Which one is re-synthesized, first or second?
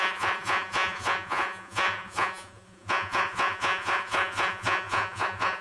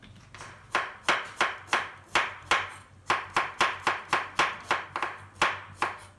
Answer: first